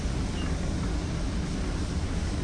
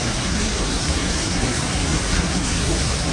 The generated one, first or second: second